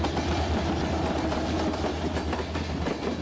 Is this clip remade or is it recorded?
recorded